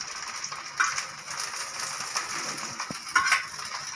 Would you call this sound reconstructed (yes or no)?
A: no